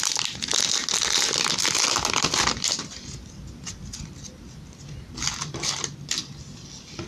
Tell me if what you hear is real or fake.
real